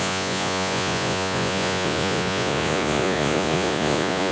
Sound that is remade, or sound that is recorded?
remade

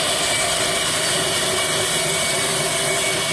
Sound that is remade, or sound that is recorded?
recorded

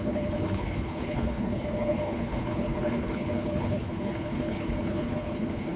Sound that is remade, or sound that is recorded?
remade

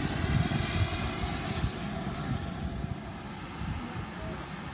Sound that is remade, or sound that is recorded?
recorded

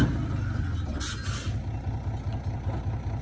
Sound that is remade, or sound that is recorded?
recorded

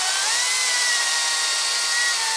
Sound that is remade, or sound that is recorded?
recorded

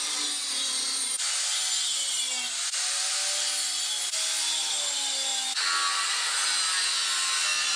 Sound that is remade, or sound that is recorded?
recorded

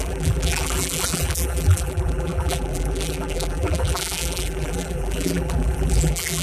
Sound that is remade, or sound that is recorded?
remade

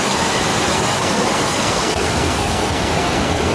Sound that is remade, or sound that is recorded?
remade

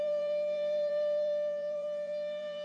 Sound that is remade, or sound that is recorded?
remade